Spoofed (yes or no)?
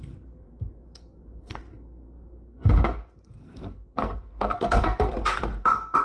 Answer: yes